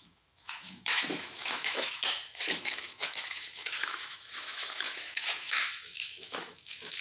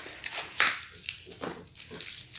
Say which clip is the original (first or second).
second